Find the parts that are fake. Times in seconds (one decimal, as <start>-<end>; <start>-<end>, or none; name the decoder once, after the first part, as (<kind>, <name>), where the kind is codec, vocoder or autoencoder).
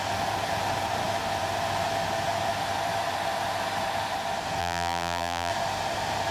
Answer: 4.6-5.5 (vocoder, BigVGAN v2)